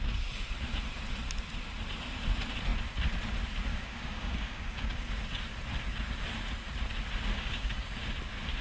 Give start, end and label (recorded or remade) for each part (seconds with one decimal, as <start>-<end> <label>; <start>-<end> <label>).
0.0-3.7 recorded; 3.7-5.1 remade; 5.1-7.3 recorded; 7.3-8.0 remade; 8.0-8.6 recorded